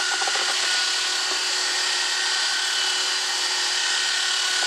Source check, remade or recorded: recorded